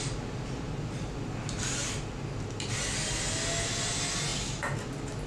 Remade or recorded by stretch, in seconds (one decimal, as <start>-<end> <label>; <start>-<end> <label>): 0.0-5.3 recorded